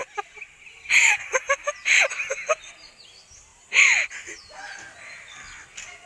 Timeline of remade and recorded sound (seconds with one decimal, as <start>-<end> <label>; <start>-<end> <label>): 0.0-6.1 recorded